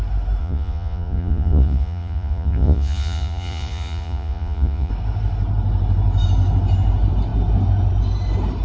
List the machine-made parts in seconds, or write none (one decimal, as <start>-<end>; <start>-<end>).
0.4-4.9